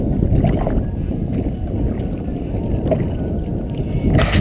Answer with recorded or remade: recorded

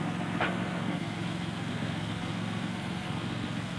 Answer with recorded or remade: remade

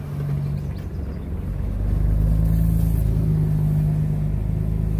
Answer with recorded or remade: recorded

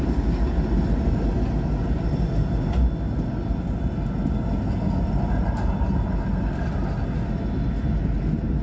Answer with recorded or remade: recorded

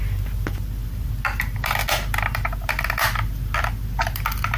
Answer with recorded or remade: recorded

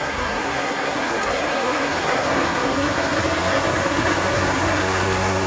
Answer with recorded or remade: remade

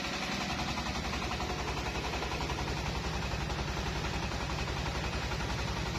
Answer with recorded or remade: recorded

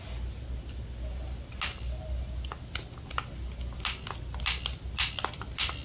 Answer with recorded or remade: recorded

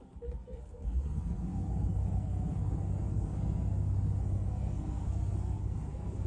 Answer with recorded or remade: remade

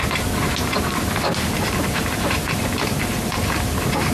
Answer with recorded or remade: recorded